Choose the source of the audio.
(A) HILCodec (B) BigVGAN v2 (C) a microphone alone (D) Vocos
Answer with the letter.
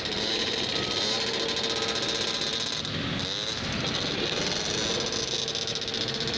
C